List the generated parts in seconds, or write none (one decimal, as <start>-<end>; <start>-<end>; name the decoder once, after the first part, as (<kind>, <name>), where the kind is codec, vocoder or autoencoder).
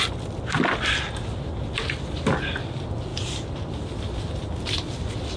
none